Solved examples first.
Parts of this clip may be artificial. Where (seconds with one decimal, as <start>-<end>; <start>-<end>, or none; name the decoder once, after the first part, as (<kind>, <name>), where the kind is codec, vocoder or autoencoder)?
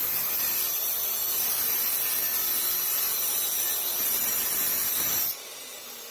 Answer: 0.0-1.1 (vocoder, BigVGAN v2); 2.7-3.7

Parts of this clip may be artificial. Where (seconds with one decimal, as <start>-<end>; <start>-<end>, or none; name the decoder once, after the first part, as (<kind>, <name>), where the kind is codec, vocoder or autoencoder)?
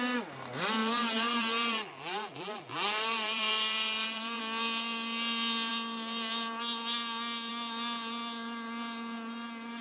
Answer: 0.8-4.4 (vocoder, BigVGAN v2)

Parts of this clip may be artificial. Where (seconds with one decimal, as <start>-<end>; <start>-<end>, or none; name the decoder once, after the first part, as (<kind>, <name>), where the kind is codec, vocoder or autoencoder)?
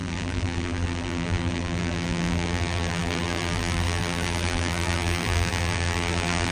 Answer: 0.0-6.5 (vocoder, BigVGAN v2)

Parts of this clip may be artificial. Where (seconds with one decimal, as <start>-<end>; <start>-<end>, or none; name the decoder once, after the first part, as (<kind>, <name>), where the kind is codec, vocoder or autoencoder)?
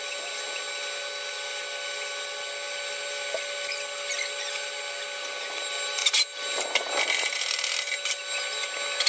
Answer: none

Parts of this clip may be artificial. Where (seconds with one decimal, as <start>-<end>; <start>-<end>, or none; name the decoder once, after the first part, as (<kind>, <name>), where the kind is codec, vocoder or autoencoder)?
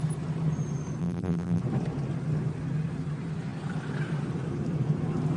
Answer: 1.0-1.6 (vocoder, BigVGAN v2)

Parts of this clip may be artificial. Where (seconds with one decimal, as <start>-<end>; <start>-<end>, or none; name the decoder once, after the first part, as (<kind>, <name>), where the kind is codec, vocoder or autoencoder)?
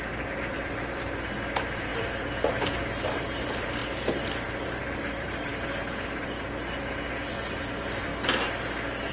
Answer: 0.0-5.5 (vocoder, BigVGAN v2); 6.2-8.1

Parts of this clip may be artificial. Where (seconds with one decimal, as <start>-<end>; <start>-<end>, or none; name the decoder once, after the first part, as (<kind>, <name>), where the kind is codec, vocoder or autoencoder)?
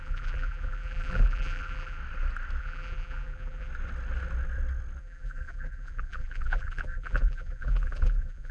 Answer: 0.0-2.0 (vocoder, BigVGAN v2); 2.6-3.7; 5.0-8.5